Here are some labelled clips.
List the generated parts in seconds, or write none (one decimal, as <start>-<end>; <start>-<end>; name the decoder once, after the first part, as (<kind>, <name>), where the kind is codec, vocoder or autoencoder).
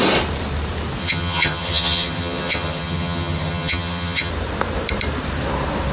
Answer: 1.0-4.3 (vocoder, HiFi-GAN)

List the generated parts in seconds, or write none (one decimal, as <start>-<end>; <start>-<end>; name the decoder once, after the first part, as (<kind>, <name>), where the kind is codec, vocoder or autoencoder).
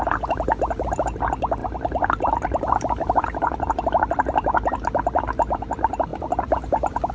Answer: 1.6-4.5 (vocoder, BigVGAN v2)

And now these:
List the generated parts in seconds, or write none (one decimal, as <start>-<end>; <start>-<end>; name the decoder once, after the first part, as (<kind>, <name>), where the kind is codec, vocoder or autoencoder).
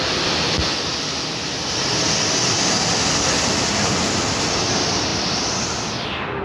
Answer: none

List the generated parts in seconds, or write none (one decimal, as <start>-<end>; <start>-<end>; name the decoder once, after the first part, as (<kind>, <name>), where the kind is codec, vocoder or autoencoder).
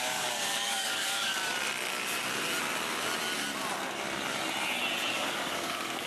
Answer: 0.0-1.4 (codec, DAC); 5.1-6.1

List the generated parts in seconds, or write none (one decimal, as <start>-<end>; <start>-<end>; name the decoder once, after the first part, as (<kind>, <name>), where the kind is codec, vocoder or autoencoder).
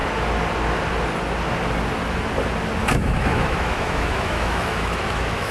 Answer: 2.8-5.5 (autoencoder, DAC-VAE)